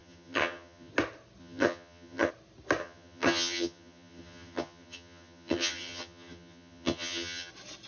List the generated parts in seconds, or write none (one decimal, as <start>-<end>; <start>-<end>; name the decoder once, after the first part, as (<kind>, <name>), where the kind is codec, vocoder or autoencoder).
0.0-0.9 (vocoder, HiFi-GAN); 1.4-2.3; 2.8-7.5